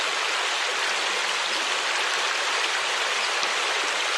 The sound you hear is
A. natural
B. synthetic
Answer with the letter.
A